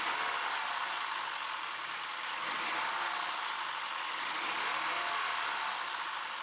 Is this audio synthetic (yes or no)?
no